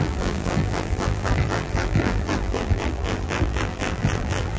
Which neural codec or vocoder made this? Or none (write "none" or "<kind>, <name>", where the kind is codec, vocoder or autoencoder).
vocoder, BigVGAN v2